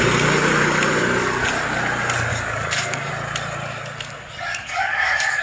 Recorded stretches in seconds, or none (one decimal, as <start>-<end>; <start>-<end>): 0.0-2.3; 3.1-4.5

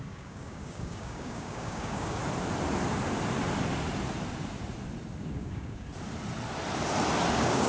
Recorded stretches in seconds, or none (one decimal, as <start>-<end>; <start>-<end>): 2.2-5.3; 5.9-7.3

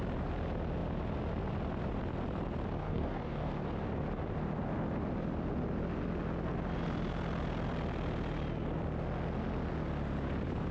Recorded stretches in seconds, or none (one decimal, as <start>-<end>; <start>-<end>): 0.0-2.8; 3.5-10.7

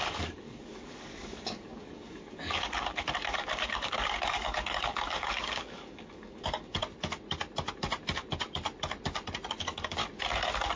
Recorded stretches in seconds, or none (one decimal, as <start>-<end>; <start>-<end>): 6.8-9.5; 10.0-10.8

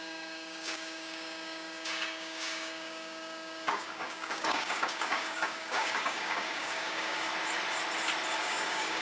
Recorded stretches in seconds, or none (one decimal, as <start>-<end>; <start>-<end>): 7.3-8.4

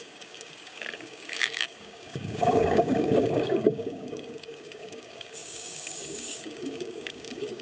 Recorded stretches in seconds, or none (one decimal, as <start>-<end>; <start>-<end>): none

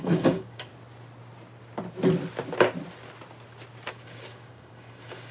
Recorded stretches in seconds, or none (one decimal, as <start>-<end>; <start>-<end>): 0.7-3.9

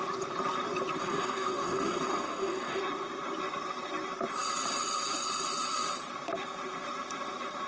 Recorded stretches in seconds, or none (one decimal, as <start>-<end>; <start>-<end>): 0.0-1.0; 2.8-7.7